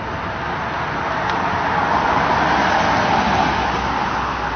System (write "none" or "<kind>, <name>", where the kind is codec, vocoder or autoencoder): none